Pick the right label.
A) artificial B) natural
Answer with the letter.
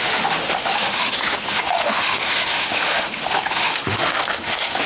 A